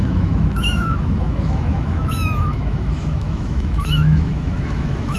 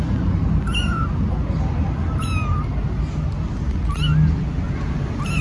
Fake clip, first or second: first